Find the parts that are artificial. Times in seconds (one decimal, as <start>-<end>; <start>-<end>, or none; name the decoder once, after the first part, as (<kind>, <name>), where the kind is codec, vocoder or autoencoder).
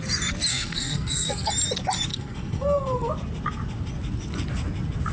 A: 0.5-1.5 (codec, SNAC); 2.1-3.1